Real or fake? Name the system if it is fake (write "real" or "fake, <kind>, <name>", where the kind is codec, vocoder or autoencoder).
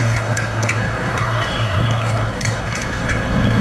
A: fake, codec, SNAC